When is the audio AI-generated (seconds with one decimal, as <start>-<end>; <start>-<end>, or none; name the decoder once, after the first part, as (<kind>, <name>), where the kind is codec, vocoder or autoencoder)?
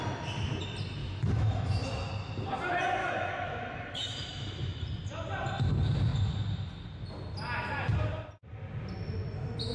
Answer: 1.0-2.1 (autoencoder, DAC-VAE); 3.0-4.8